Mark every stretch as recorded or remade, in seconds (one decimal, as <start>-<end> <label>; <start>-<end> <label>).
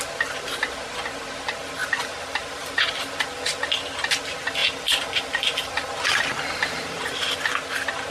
0.0-1.8 recorded; 1.8-3.7 remade; 3.7-4.6 recorded; 4.6-7.4 remade; 7.4-8.1 recorded